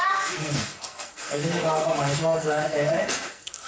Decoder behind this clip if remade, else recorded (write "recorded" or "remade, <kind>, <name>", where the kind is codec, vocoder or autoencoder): remade, codec, SNAC